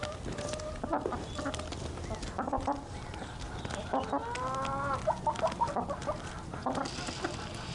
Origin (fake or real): real